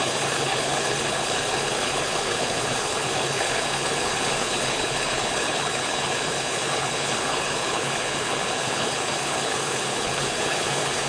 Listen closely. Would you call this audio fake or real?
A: fake